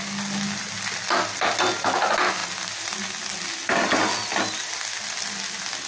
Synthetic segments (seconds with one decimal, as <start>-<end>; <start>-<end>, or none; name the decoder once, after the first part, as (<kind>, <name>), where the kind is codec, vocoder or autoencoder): none